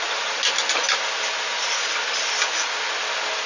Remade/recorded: recorded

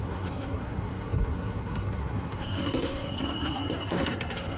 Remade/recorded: remade